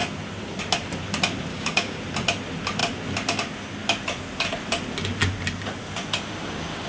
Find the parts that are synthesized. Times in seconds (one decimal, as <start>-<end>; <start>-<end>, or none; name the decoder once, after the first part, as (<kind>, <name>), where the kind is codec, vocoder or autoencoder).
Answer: 1.5-2.0 (codec, DAC)